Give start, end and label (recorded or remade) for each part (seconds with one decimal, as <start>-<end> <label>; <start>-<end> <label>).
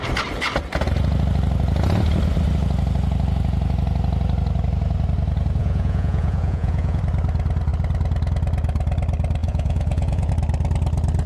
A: 0.0-5.6 recorded; 5.6-7.0 remade; 7.0-9.4 recorded; 9.4-10.3 remade; 10.3-11.3 recorded